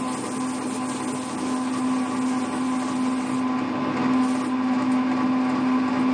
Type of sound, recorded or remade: recorded